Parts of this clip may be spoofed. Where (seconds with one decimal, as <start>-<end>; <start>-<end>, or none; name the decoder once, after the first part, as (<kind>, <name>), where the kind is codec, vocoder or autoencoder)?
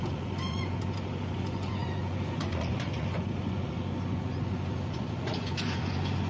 0.0-6.3 (vocoder, Vocos)